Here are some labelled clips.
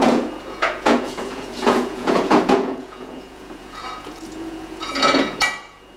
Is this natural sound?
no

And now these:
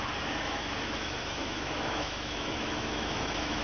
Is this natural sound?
no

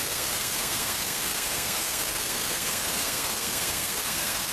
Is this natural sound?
no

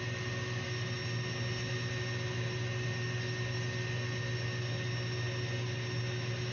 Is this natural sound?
yes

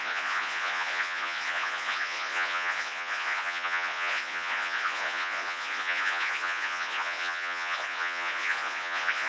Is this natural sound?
no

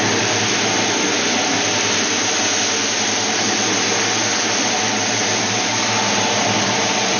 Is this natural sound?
yes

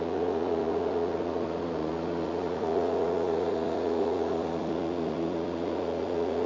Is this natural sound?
no